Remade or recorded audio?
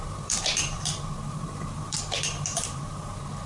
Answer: remade